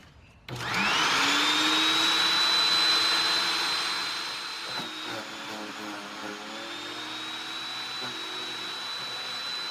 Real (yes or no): yes